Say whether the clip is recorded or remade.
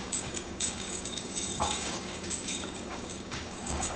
remade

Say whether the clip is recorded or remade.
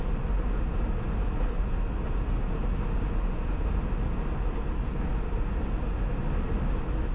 recorded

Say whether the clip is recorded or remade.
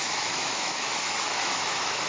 remade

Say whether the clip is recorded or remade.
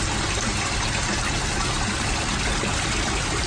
recorded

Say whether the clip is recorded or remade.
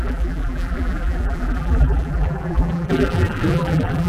remade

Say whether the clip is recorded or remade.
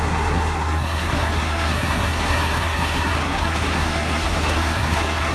remade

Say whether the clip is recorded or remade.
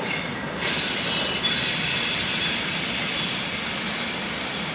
recorded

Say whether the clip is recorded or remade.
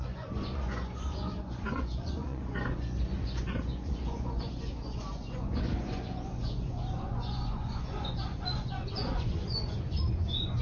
remade